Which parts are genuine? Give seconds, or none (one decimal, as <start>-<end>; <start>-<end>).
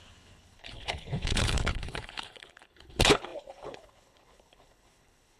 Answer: none